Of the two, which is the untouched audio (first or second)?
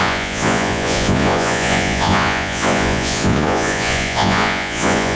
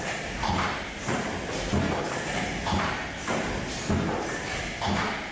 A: second